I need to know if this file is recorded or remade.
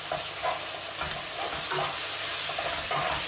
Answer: recorded